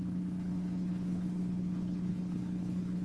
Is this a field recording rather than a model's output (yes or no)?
no